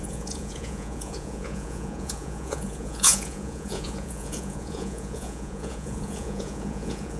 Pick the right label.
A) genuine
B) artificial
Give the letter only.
B